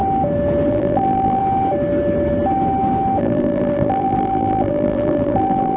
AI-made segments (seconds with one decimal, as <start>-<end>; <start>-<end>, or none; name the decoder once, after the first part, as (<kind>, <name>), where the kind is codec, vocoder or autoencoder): 0.7-1.4 (vocoder, BigVGAN v2); 3.2-5.8